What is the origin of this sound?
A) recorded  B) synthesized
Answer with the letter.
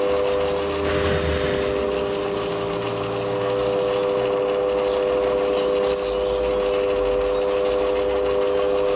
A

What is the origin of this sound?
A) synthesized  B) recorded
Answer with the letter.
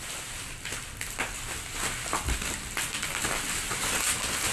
B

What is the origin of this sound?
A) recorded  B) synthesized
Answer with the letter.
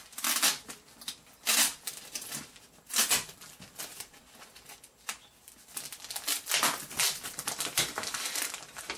A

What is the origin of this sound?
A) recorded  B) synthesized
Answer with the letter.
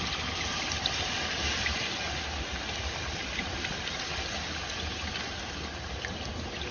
A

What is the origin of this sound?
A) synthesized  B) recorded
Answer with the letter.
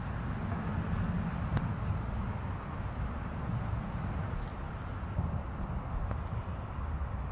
B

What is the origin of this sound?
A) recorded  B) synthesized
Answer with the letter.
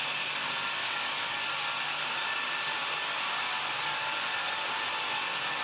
A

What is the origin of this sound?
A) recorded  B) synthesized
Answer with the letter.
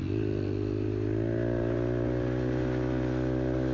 A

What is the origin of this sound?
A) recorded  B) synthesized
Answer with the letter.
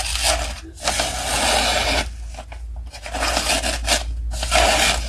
A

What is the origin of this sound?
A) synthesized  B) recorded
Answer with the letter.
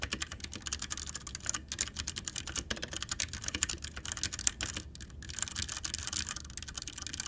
B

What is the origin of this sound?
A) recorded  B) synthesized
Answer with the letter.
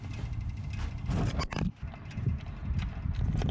A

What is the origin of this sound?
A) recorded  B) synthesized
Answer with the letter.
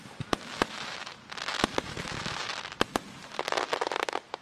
A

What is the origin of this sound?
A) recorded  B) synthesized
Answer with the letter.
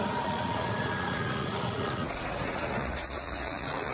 B